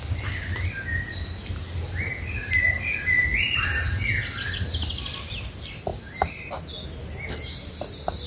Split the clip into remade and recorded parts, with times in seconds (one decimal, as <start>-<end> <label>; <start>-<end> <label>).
0.0-8.3 recorded